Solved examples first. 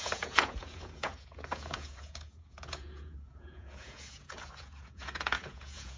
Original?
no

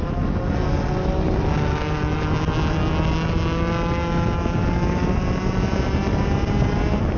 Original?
yes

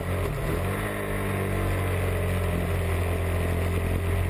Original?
yes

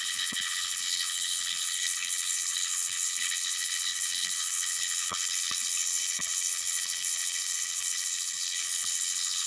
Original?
no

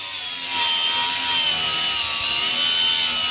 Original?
yes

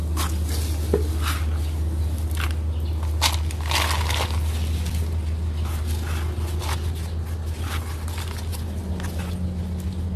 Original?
yes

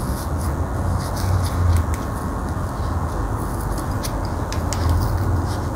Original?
yes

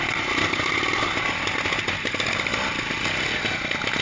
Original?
yes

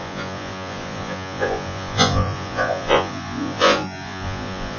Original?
no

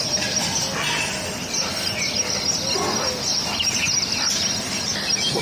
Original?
yes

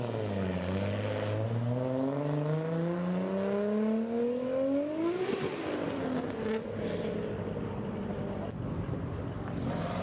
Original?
yes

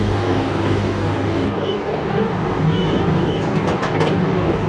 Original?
no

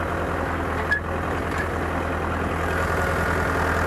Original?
yes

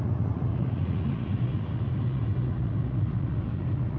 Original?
no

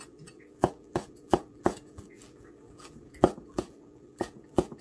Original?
no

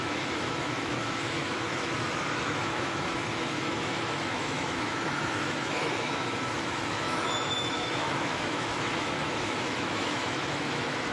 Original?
no